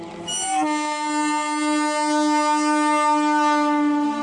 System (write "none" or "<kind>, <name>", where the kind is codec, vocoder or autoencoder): none